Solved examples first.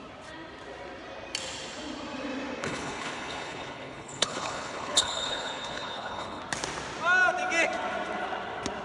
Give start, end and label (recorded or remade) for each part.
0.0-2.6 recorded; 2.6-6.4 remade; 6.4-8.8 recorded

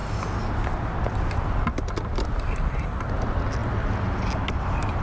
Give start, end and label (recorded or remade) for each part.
0.0-5.0 recorded

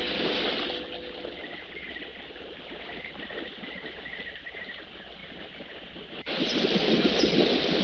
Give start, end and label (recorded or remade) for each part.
0.0-7.8 recorded

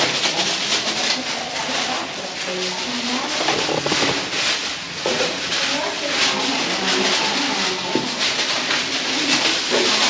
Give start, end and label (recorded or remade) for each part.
0.0-4.7 recorded; 4.7-5.5 remade; 5.5-10.1 recorded

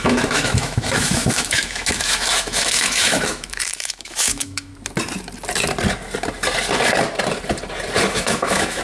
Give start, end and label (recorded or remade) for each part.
0.0-4.7 remade; 4.7-8.1 recorded; 8.1-8.8 remade

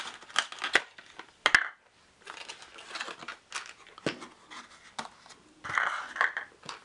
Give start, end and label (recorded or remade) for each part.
0.0-6.8 recorded

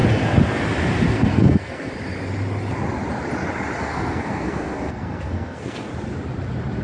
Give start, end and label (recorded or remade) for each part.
0.0-1.1 recorded; 1.1-1.9 remade; 1.9-3.8 recorded; 3.8-5.9 remade; 5.9-6.8 recorded

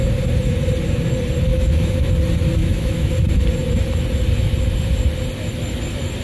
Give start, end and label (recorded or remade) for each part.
0.0-1.5 recorded; 1.5-2.1 remade; 2.1-2.6 recorded; 2.6-3.1 remade; 3.1-6.2 recorded